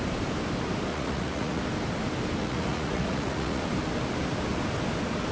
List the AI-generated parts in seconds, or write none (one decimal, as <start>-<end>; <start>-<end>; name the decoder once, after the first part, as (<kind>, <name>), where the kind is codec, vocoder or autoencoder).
0.9-1.6 (vocoder, Vocos); 2.4-3.6